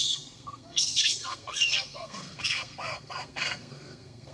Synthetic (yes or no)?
yes